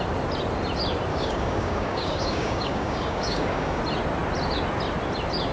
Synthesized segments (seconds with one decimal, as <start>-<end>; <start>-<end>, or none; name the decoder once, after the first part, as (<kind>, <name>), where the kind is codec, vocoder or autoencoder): 1.1-3.8 (codec, DAC)